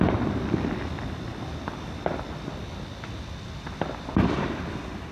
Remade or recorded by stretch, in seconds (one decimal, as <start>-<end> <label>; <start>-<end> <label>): 0.0-5.1 recorded

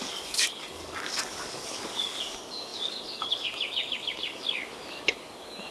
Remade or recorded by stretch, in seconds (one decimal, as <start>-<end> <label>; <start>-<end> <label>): 0.0-5.7 remade

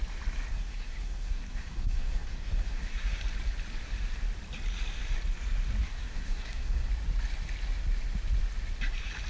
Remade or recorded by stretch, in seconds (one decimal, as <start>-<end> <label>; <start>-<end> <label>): 0.0-0.5 recorded; 0.5-3.2 remade; 3.2-5.8 recorded; 5.8-6.9 remade; 6.9-9.3 recorded

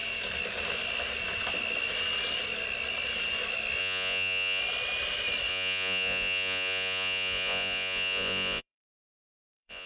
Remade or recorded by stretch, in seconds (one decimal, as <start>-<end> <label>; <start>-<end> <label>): 0.0-3.8 recorded; 3.8-4.6 remade; 4.6-5.5 recorded; 5.5-9.9 remade

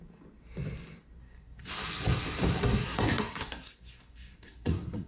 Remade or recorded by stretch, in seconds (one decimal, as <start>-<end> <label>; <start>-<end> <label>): 0.0-1.2 recorded; 1.2-1.7 remade; 1.7-2.6 recorded; 2.6-5.1 remade